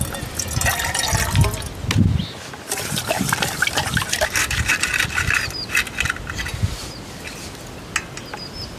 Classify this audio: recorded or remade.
recorded